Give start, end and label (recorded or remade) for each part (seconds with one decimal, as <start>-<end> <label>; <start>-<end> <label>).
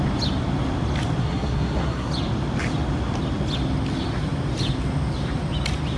0.0-1.2 recorded; 1.2-2.1 remade; 2.1-6.0 recorded